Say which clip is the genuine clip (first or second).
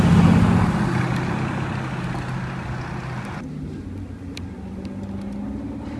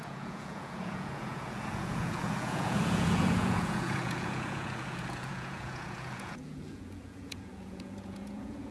first